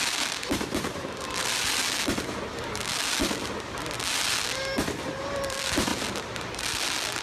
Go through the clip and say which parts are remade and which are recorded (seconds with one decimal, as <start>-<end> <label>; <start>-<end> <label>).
0.0-1.4 remade; 1.4-5.1 recorded; 5.1-5.9 remade; 5.9-7.2 recorded